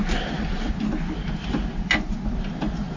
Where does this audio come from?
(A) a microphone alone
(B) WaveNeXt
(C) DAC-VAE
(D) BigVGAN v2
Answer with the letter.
A